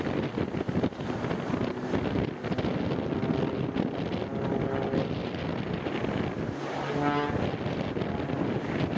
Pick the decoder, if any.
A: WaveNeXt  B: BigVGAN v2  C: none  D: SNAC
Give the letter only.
C